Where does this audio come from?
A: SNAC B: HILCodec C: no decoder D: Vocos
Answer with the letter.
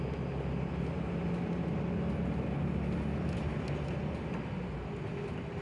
C